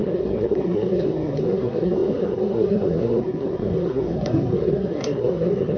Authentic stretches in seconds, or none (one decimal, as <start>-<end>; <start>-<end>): none